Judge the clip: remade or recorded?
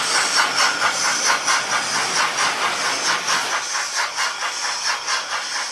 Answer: recorded